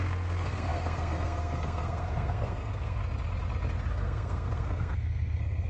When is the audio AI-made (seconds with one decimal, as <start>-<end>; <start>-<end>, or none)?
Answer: 0.0-3.0; 3.9-5.7